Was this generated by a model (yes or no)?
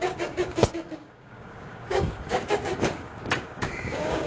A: yes